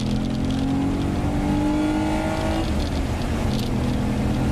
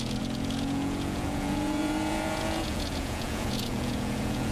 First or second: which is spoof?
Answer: second